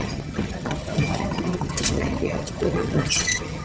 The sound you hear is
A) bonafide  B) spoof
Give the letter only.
B